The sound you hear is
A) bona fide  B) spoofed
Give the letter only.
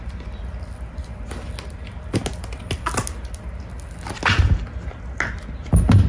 A